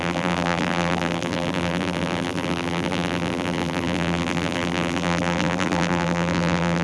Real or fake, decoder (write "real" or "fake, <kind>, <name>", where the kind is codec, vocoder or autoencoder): fake, vocoder, BigVGAN v2